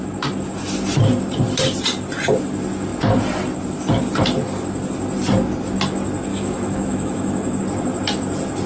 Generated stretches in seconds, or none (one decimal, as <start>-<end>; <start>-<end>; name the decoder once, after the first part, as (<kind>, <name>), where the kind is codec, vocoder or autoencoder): 6.3-7.6 (autoencoder, DAC-VAE)